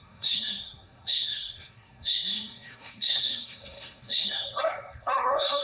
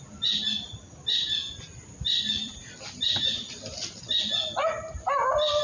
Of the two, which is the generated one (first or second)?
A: first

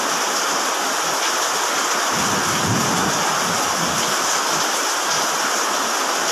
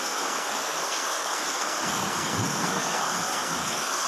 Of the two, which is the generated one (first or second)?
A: second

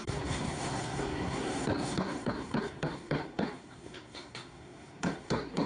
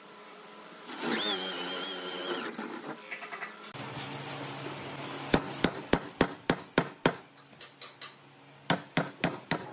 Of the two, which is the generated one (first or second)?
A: first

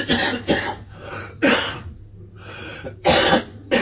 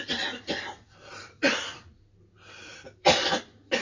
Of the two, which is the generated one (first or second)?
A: second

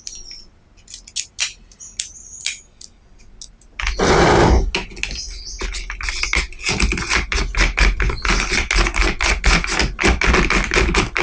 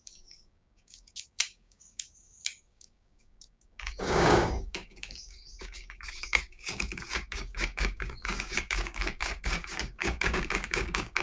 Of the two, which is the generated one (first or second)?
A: second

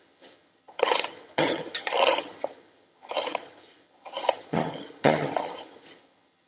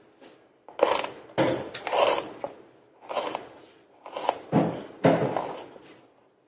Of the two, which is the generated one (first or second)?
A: first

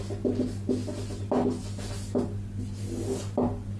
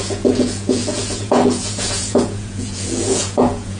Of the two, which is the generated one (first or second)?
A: second